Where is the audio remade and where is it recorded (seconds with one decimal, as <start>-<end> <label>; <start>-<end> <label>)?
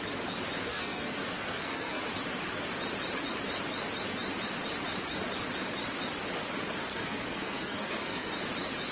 0.0-0.7 recorded; 0.7-2.0 remade; 2.0-6.9 recorded; 6.9-8.3 remade; 8.3-8.9 recorded